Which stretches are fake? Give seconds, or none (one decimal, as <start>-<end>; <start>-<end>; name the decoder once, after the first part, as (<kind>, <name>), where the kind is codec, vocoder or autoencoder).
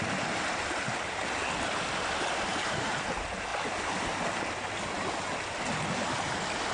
2.5-3.1 (vocoder, BigVGAN v2)